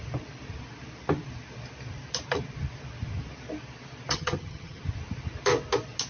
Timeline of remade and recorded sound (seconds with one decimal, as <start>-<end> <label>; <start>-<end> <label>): 0.0-4.1 recorded; 4.1-4.8 remade; 4.8-6.1 recorded